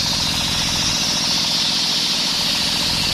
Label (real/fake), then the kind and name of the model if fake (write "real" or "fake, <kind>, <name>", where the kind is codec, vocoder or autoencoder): real